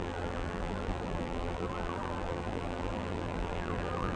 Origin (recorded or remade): remade